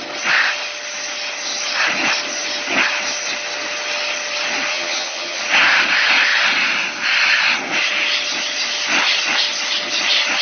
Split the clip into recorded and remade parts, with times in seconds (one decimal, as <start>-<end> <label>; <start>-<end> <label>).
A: 0.0-4.7 recorded; 4.7-5.4 remade; 5.4-10.4 recorded